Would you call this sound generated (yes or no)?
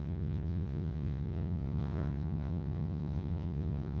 yes